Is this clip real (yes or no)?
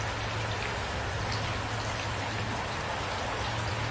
yes